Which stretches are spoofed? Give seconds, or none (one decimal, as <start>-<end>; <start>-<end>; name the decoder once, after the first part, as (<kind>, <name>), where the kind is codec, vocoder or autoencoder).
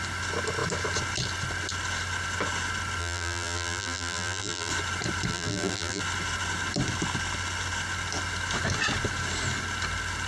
3.0-4.7 (vocoder, BigVGAN v2); 5.3-6.0